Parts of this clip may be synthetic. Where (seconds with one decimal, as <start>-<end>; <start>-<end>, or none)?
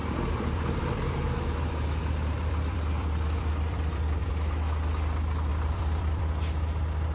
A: 0.0-4.3; 5.5-6.2